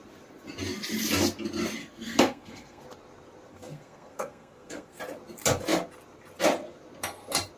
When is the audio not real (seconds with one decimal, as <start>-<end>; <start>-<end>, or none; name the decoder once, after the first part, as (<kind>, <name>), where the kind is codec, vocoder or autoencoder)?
1.8-2.8 (codec, SNAC); 3.5-5.0